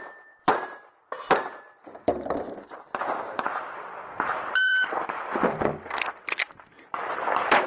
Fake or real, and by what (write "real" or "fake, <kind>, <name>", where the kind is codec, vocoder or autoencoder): fake, vocoder, BigVGAN v2